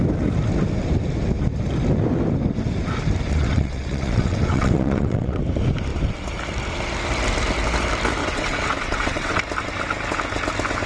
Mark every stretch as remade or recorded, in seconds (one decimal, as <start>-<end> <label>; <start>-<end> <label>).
0.0-3.3 recorded; 3.3-5.4 remade; 5.4-8.2 recorded; 8.2-9.4 remade; 9.4-10.9 recorded